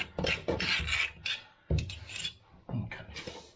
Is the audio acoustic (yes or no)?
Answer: yes